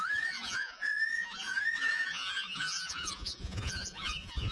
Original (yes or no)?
no